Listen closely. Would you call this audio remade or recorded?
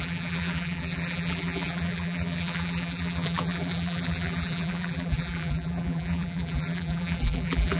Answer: remade